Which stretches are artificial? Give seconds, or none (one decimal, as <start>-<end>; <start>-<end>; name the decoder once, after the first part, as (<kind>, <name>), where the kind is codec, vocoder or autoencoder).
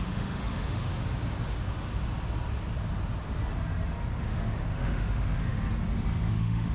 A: 0.0-0.9 (autoencoder, DAC-VAE); 4.2-5.5; 6.3-6.7